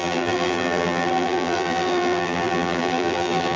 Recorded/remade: remade